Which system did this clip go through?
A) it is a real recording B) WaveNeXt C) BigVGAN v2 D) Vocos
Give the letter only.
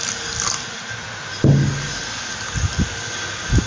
A